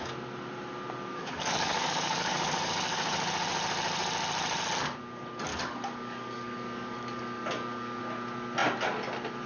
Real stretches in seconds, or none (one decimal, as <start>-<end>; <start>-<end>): 0.0-1.2; 3.3-5.5; 8.0-9.5